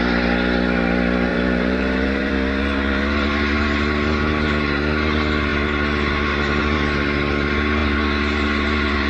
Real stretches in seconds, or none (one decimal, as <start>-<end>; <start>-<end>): 0.0-1.3; 2.3-9.1

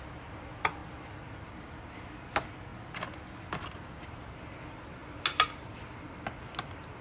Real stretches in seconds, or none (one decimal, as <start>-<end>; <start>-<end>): 0.0-7.0

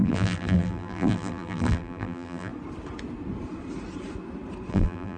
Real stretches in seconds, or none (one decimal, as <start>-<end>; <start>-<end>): 2.5-4.7

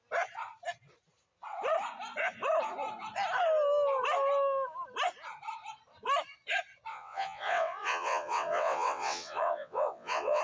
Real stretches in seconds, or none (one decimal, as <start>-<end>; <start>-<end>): 0.0-6.9

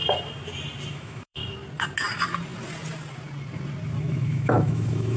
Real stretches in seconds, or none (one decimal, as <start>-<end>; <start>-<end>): 0.0-0.9; 1.4-4.0

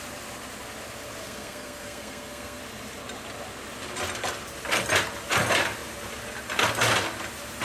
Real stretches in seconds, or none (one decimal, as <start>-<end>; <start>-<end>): 0.0-1.2; 2.6-7.6

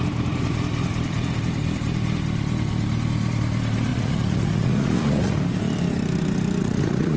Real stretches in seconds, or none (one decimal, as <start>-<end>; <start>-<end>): 0.0-3.9; 5.3-6.6

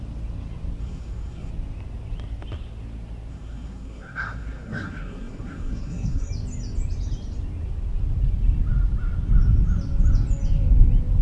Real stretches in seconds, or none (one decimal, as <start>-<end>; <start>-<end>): 0.0-0.8; 1.5-3.3; 6.3-11.2